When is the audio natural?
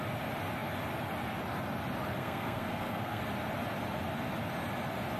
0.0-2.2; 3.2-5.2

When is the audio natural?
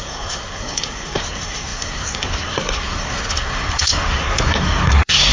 none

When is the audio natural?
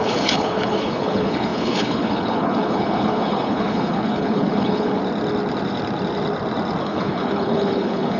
5.0-6.8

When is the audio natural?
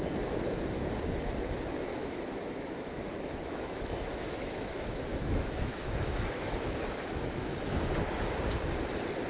0.0-1.9; 6.5-9.3